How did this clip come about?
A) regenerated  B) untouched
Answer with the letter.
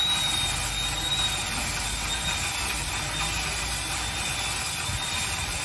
B